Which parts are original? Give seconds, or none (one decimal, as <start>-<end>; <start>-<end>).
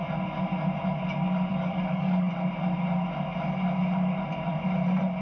0.0-1.5; 2.3-5.2